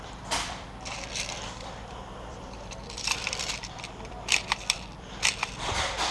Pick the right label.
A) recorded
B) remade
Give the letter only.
B